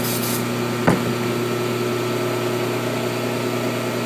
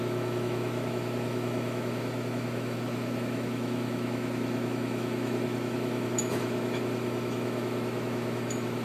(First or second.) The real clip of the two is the first